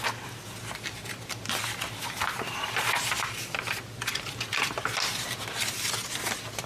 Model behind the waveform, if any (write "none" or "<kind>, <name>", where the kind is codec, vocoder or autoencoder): none